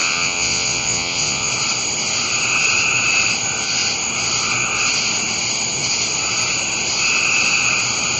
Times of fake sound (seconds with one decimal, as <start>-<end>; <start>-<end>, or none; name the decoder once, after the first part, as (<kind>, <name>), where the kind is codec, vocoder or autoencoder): 0.0-1.5 (vocoder, WaveNeXt)